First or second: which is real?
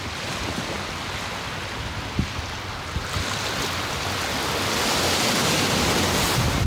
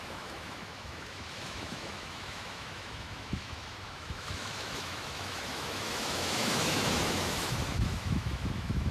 first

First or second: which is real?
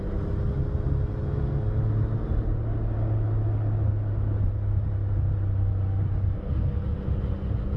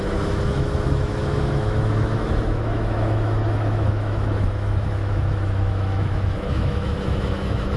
first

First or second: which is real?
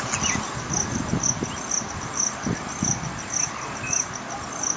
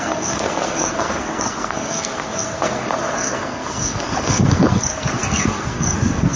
first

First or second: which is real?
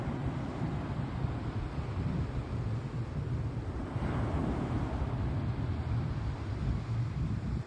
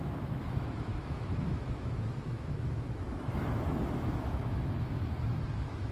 first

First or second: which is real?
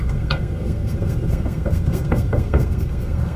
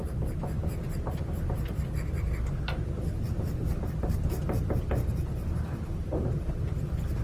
second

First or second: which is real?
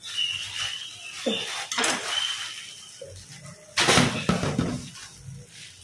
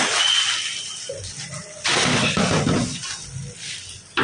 first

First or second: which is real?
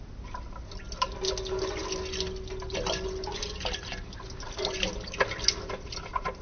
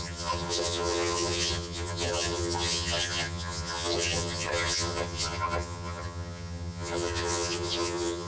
first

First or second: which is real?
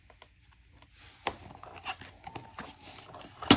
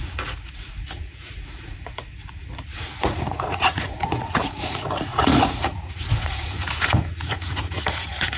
first